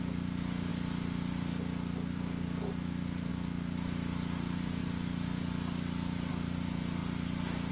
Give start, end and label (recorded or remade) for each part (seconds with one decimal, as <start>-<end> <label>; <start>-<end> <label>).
0.0-7.0 recorded; 7.0-7.7 remade